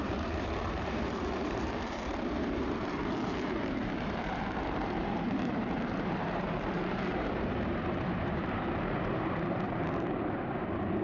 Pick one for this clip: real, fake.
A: fake